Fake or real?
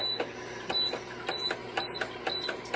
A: real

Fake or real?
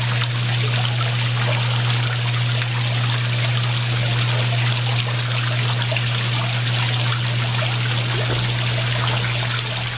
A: real